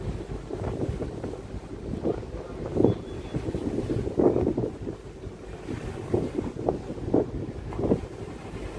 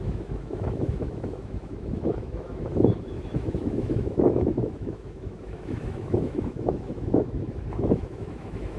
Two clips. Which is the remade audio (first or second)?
second